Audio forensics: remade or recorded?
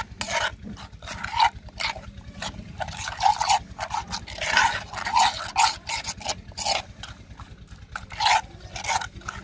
recorded